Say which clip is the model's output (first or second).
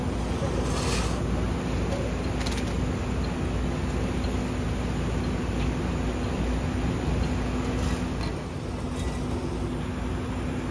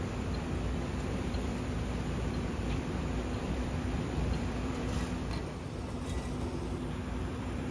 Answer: second